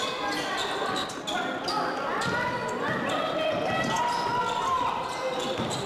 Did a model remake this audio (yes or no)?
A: no